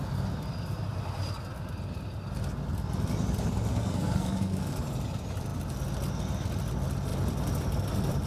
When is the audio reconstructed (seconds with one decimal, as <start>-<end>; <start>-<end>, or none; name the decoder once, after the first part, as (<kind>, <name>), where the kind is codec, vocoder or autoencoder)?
3.7-4.7 (codec, SNAC)